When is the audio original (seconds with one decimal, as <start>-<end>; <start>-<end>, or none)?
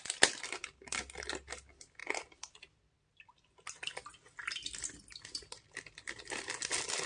0.0-7.1